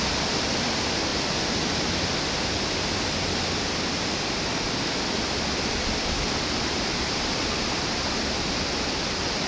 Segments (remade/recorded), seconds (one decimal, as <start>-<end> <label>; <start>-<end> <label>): 0.0-1.1 remade; 1.1-4.5 recorded; 4.5-9.5 remade